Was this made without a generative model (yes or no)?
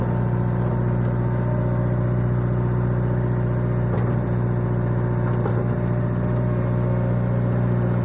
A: yes